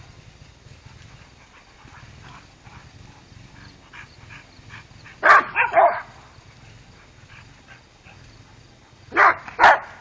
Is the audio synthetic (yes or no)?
no